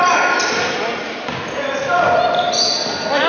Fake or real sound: real